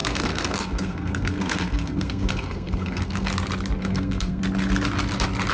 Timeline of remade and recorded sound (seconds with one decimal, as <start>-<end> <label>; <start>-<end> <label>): 0.0-3.3 remade; 3.3-3.8 recorded; 3.8-4.4 remade; 4.4-5.5 recorded